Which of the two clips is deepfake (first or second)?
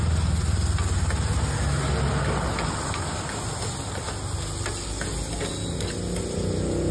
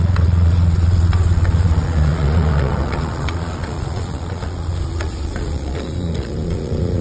second